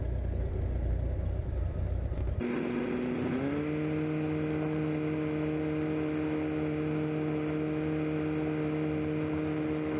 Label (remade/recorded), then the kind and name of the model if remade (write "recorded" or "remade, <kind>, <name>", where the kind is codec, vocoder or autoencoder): recorded